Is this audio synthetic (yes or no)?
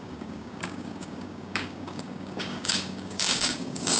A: yes